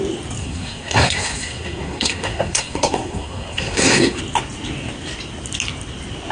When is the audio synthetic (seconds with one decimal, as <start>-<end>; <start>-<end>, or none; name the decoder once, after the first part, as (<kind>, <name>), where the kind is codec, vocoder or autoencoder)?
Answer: 0.4-4.2 (codec, SNAC)